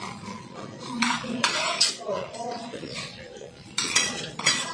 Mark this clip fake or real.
fake